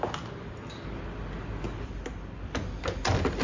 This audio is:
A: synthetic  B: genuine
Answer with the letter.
B